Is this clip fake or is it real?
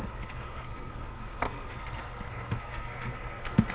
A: fake